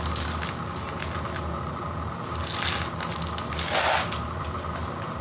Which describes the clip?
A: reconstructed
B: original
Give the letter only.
B